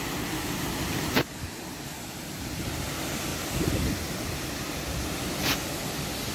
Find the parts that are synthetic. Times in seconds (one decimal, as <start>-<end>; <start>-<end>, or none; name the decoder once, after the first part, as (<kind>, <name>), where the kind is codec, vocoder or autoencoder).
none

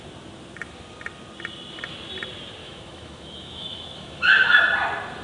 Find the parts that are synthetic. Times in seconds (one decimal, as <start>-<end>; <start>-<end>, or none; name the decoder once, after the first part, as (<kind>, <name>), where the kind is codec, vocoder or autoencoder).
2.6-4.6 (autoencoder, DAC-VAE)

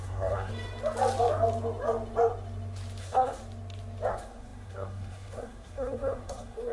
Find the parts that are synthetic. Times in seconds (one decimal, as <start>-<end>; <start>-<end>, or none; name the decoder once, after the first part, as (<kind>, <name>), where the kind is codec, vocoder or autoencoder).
0.0-0.5 (codec, SNAC); 3.0-3.4; 4.1-6.7

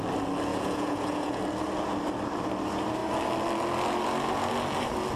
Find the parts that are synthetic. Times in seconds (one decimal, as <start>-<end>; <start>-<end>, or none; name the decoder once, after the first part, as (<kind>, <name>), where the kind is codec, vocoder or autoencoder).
0.5-1.4 (vocoder, Vocos)